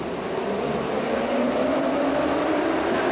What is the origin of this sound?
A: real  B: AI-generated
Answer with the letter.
A